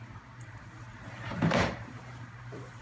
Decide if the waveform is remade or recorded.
remade